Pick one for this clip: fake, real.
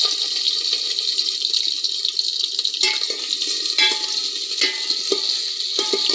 real